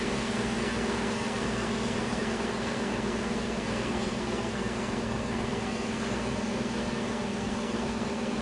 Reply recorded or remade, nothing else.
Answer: remade